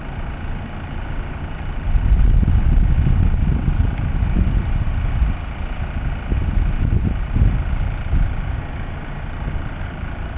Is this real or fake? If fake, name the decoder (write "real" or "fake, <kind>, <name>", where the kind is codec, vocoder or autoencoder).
real